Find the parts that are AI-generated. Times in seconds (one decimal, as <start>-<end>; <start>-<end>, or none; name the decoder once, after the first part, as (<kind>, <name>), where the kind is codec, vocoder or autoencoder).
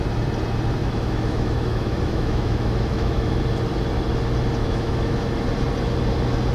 0.8-3.4 (autoencoder, DAC-VAE); 4.6-5.2